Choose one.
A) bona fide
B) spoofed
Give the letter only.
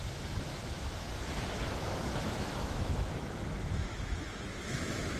B